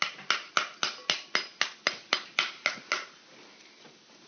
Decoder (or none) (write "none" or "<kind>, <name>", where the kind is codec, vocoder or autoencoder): none